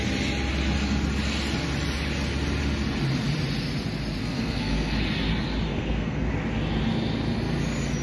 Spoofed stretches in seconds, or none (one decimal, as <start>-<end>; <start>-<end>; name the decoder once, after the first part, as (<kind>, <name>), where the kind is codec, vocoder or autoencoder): 4.2-4.9 (codec, SNAC); 5.7-6.3